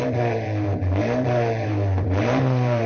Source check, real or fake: fake